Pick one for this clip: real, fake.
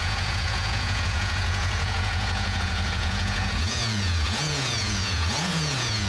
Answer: fake